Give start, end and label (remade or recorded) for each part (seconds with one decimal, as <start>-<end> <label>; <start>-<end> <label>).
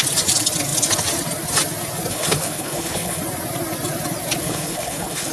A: 0.0-2.1 recorded; 2.1-3.2 remade; 3.2-4.4 recorded; 4.4-5.3 remade